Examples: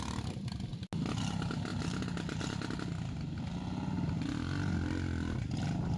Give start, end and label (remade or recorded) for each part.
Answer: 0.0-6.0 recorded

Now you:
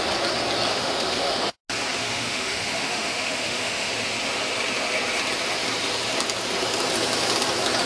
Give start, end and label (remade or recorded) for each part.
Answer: 0.0-0.7 recorded; 0.7-1.6 remade; 1.6-2.0 recorded; 2.0-3.9 remade; 3.9-7.9 recorded

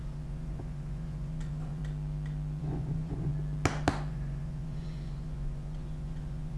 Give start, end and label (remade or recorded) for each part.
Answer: 0.0-1.8 remade; 1.8-2.6 recorded; 2.6-3.3 remade; 3.3-4.1 recorded; 4.1-6.6 remade